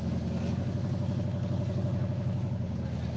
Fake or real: fake